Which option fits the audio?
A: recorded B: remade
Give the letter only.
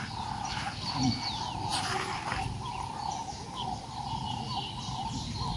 A